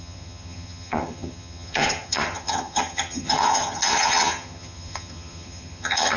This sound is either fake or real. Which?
fake